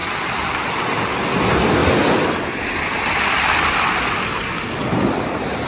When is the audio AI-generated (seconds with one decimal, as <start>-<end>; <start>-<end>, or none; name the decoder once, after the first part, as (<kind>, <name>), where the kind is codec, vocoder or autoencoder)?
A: none

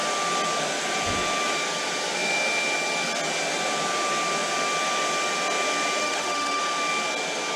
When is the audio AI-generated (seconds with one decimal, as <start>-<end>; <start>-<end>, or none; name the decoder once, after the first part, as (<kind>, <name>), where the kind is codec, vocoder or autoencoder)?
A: 6.0-6.6 (autoencoder, DAC-VAE)

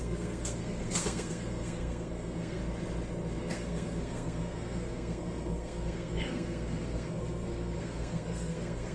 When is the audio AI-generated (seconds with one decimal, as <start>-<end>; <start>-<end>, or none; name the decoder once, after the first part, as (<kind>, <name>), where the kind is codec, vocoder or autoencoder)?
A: 0.0-2.6 (codec, SNAC); 3.4-8.9